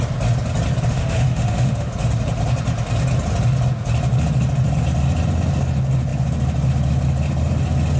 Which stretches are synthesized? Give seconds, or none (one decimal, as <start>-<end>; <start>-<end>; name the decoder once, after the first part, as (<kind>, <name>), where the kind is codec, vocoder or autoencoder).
0.9-1.9 (autoencoder, DAC-VAE)